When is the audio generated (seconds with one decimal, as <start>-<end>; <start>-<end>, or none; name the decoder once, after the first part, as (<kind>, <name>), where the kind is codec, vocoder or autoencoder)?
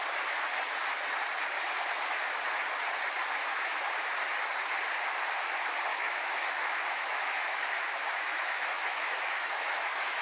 5.9-10.2 (autoencoder, DAC-VAE)